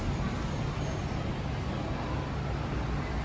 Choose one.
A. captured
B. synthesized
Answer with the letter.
A